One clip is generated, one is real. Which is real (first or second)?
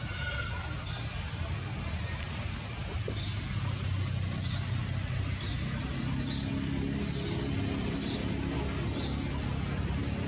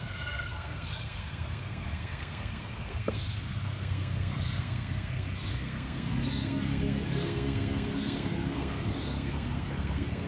first